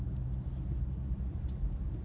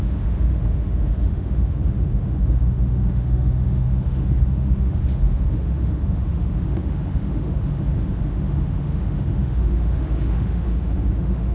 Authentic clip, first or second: first